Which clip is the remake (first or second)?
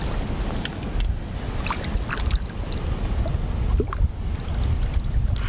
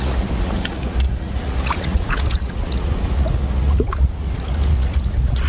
second